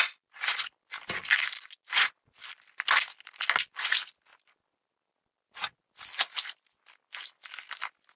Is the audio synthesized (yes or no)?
no